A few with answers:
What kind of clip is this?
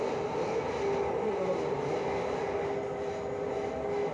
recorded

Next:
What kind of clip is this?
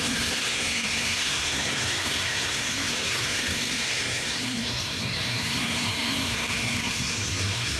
remade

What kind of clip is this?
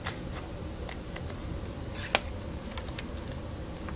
recorded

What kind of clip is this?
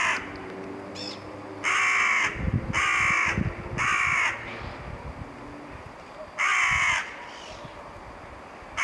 recorded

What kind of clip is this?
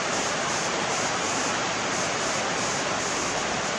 remade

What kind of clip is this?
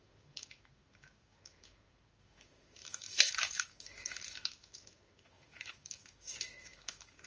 remade